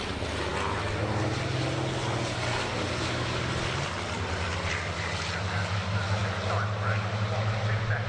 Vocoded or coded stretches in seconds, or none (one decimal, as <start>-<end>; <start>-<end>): none

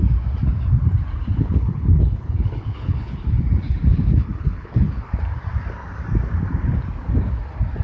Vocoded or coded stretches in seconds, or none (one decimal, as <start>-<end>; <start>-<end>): 1.3-3.4; 3.9-5.1

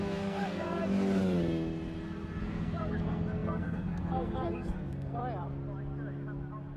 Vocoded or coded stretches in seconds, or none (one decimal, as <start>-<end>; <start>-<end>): 0.0-0.8; 2.4-5.2

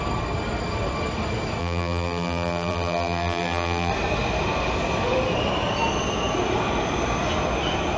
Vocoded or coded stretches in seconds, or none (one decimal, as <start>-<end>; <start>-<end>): 1.6-3.9

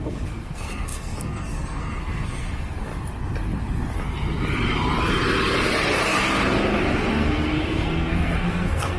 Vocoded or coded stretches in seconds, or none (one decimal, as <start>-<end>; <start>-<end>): 0.0-2.9; 7.1-9.0

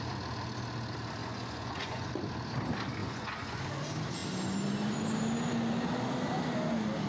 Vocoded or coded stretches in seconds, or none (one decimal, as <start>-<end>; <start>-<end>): 1.2-2.1; 3.0-3.6

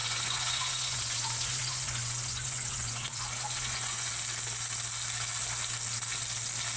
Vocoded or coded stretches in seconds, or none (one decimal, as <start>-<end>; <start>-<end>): 0.0-4.1

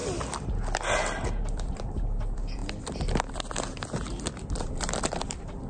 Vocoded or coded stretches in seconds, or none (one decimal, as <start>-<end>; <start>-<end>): 1.4-5.7